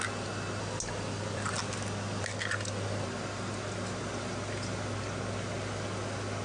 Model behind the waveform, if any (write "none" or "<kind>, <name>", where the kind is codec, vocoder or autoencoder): none